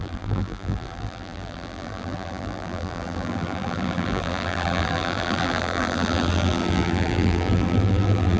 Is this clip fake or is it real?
fake